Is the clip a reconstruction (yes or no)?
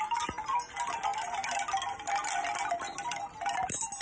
no